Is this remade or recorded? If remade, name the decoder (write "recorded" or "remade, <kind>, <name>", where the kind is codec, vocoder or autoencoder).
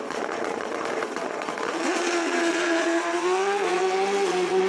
remade, vocoder, Vocos